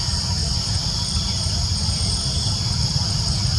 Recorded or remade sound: recorded